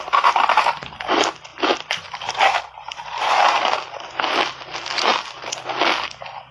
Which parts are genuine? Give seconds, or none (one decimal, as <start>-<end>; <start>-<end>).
0.0-6.5